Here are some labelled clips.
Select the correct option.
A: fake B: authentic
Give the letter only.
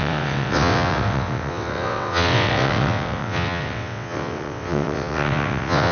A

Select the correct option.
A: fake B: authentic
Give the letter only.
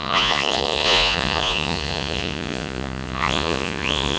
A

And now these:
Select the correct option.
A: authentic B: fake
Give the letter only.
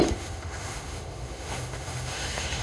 B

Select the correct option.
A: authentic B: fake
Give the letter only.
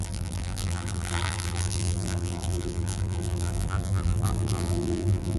B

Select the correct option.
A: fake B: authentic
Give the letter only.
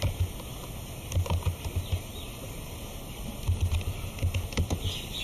B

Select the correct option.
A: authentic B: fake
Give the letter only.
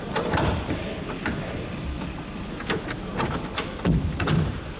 B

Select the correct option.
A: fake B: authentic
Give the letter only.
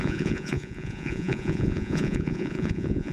A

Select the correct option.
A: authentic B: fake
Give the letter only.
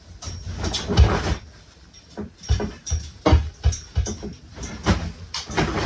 A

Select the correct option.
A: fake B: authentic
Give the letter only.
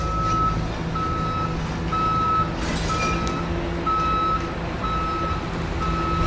B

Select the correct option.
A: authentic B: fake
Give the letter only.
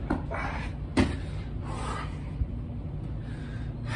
A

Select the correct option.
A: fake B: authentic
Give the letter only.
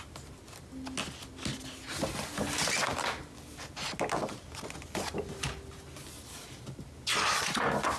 B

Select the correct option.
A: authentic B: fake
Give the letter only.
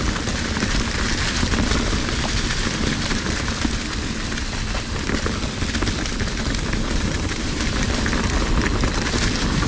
B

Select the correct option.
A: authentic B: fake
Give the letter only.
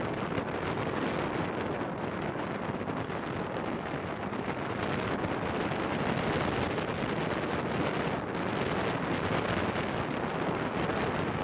A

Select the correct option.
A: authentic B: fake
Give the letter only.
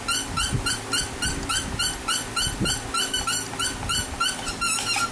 A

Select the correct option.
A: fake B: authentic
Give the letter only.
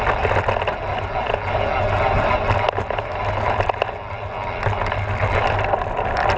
B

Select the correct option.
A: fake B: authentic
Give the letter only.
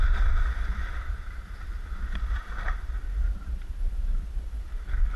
B